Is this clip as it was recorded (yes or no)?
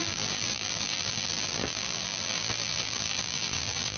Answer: no